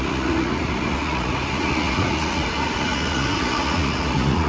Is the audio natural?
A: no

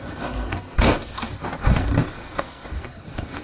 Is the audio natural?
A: no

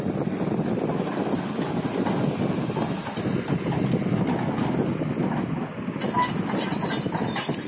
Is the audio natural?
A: yes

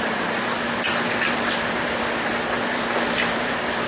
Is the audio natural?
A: no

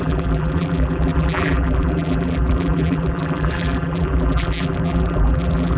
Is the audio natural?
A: no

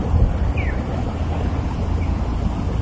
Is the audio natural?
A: yes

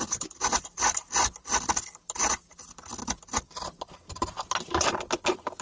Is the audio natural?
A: yes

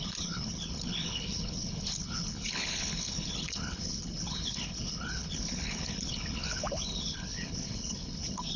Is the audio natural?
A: no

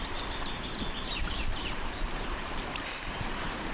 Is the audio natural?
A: no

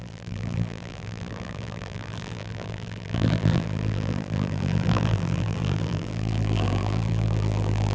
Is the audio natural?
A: no